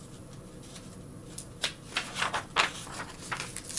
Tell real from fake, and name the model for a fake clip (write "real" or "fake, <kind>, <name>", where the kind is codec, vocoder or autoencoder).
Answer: real